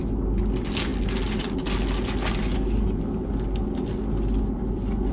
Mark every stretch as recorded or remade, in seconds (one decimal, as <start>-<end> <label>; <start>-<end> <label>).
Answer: 0.0-5.1 recorded